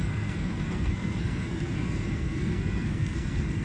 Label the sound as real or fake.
fake